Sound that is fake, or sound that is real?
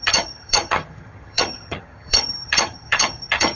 fake